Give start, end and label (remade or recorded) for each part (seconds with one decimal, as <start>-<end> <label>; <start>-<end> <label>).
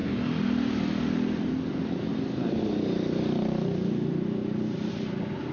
0.0-5.5 recorded